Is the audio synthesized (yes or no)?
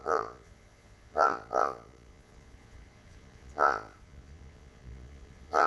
yes